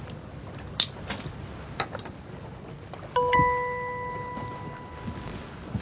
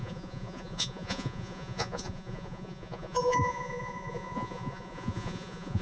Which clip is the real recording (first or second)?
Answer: first